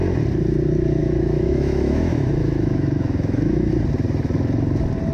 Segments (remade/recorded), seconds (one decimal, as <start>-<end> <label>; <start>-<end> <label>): 0.0-1.0 recorded; 1.0-3.7 remade; 3.7-5.1 recorded

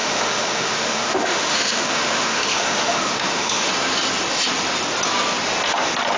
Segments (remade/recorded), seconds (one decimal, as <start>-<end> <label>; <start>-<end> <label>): 0.0-3.7 remade; 3.7-6.2 recorded

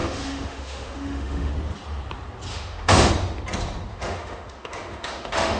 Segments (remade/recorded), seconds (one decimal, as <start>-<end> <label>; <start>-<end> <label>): 0.0-1.5 remade; 1.5-2.5 recorded; 2.5-3.1 remade; 3.1-3.9 recorded; 3.9-5.6 remade

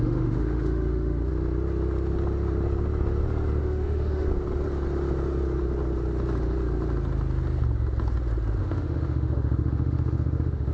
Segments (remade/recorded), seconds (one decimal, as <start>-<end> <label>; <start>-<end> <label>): 0.0-1.3 remade; 1.3-3.6 recorded; 3.6-4.3 remade; 4.3-8.6 recorded; 8.6-10.7 remade